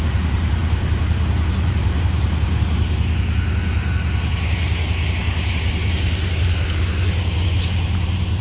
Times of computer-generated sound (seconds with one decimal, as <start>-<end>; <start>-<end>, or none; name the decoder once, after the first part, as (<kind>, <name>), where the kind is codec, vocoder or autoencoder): 0.0-2.8 (vocoder, BigVGAN v2); 5.2-8.4